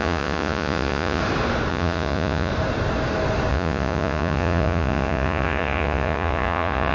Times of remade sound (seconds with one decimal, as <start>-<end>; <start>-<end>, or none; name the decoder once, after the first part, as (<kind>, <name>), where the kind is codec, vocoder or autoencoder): 0.0-1.2 (vocoder, Vocos); 1.7-2.5; 3.5-6.9